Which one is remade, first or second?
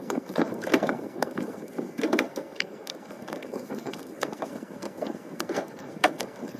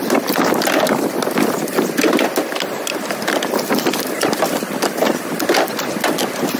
first